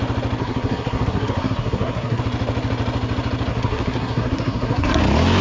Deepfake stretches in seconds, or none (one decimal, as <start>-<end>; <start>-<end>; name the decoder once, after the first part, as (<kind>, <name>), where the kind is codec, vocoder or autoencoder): 0.4-2.2 (codec, SNAC); 3.5-5.0